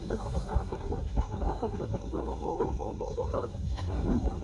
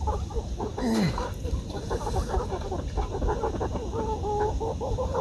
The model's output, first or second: first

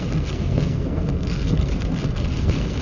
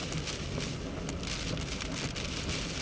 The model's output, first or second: first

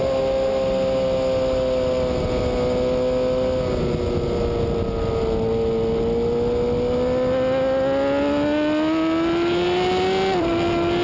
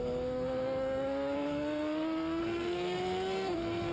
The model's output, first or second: second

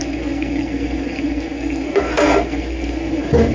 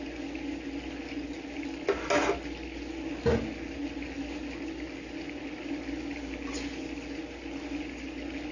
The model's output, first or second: first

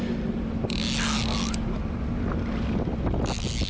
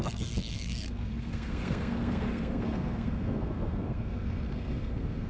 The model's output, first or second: second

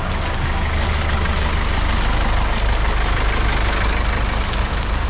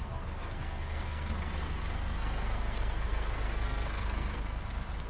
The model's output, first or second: second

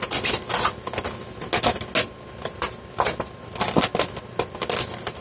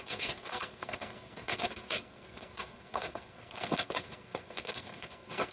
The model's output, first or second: second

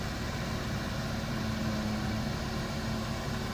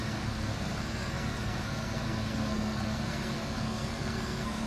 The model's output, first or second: second